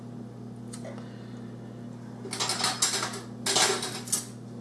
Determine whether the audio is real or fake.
real